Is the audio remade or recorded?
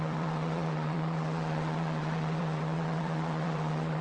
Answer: remade